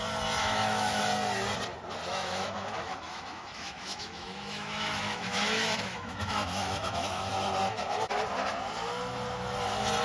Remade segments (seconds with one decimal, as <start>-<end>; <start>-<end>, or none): 0.4-1.0; 2.1-7.3

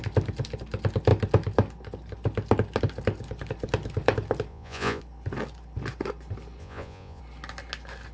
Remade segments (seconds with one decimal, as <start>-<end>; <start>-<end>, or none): 4.5-5.0; 6.6-7.2